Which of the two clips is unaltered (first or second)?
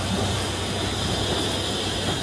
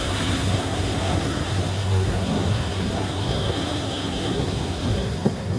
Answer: first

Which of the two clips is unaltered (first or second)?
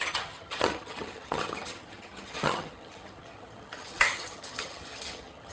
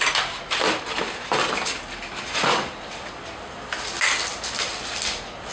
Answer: second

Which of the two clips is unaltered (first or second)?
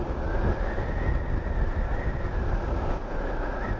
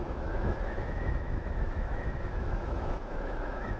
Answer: first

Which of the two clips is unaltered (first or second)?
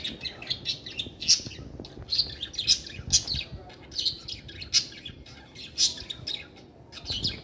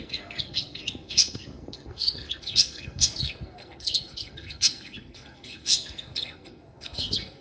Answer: first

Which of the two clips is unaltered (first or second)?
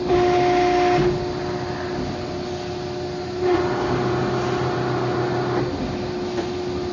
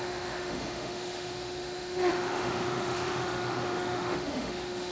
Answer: first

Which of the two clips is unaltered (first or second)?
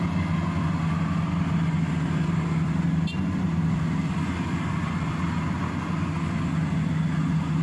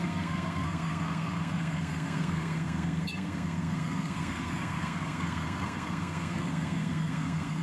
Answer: first